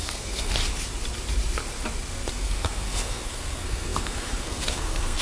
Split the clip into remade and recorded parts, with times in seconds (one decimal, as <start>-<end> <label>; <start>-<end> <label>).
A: 0.0-0.6 remade; 0.6-2.3 recorded; 2.3-5.2 remade